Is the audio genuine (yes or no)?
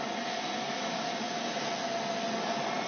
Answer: yes